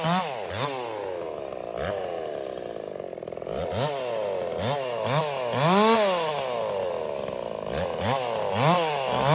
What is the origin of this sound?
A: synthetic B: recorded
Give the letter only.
B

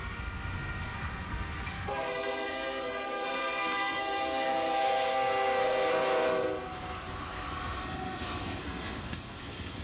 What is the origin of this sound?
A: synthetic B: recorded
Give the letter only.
A